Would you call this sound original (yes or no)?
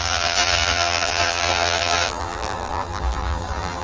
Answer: no